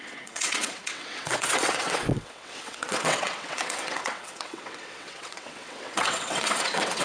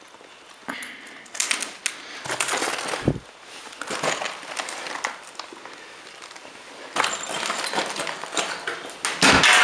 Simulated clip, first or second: first